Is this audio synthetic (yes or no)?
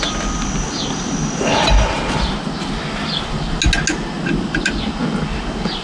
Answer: no